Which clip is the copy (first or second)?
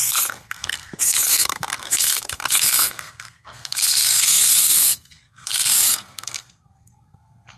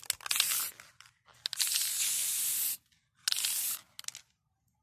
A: first